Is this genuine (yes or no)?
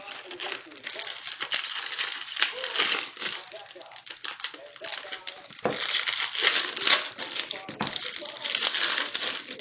yes